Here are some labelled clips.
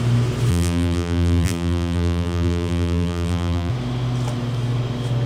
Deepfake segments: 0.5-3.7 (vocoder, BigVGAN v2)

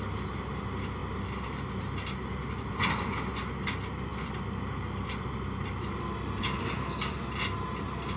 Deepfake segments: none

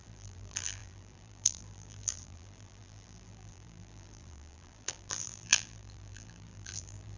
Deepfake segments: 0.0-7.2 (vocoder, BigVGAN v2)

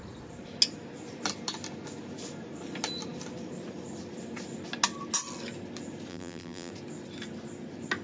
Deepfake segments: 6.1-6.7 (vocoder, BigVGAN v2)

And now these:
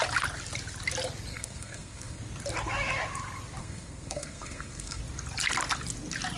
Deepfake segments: 1.3-2.2 (codec, SNAC); 3.6-5.0

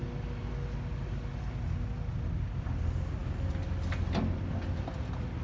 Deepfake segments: none